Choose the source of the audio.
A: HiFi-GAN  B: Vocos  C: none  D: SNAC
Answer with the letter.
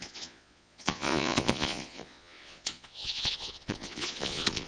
B